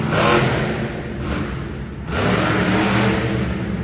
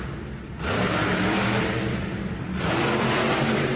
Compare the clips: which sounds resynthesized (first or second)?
second